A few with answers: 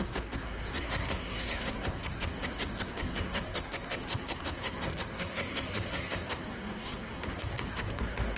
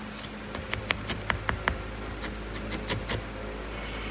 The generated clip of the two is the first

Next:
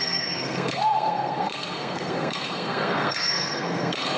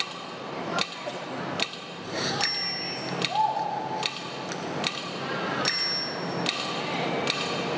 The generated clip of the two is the first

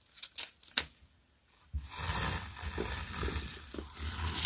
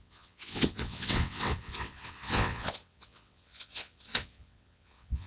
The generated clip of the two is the second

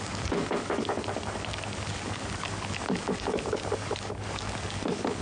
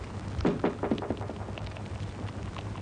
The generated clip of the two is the first